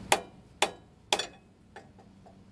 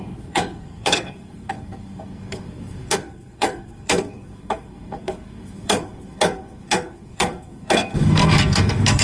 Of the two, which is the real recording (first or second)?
first